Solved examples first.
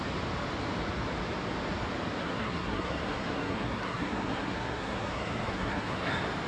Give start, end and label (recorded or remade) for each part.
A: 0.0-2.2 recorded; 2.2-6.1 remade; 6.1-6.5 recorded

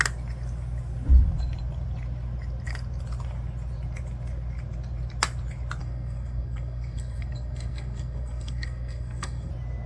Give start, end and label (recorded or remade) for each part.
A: 0.0-5.8 recorded; 5.8-9.5 remade; 9.5-9.9 recorded